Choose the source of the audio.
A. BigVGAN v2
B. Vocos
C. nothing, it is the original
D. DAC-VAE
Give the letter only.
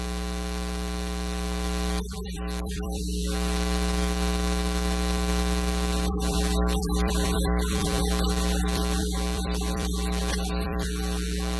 A